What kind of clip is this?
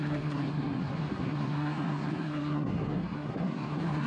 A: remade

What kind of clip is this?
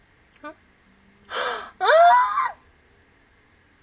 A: recorded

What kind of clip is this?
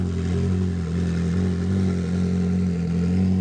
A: recorded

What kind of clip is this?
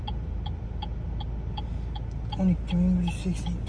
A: recorded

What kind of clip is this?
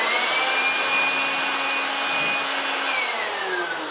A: recorded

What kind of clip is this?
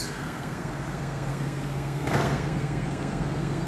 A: remade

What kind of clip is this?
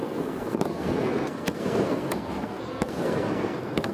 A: remade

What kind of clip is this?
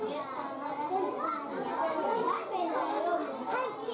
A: recorded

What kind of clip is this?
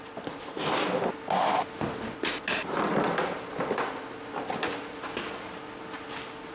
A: recorded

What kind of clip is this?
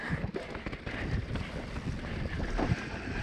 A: recorded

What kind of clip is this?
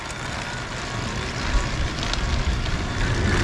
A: recorded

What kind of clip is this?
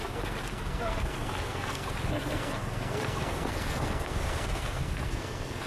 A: remade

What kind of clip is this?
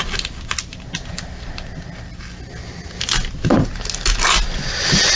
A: recorded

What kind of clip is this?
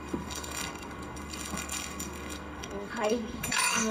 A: remade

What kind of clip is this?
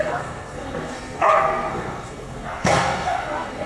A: remade